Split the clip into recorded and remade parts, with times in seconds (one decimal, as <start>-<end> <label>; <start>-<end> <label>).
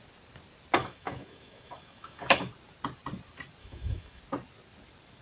0.0-0.8 recorded; 0.8-2.5 remade; 2.5-3.6 recorded; 3.6-4.2 remade; 4.2-5.2 recorded